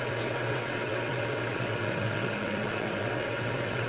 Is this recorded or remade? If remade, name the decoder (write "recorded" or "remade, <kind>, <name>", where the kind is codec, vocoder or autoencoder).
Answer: remade, vocoder, WaveNeXt